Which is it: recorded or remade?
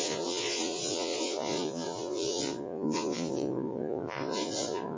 remade